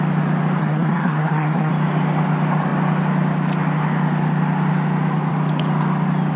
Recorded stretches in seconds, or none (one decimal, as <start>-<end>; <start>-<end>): 0.0-0.6; 1.7-6.4